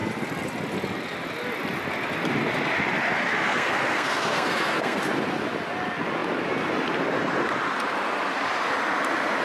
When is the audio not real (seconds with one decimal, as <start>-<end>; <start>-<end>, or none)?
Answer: 3.3-5.0